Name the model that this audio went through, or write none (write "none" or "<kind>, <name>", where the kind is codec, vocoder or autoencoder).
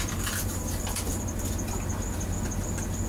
none